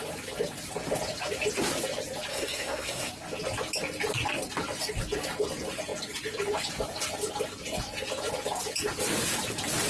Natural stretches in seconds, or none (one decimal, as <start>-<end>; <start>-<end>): 0.0-2.3; 3.1-9.9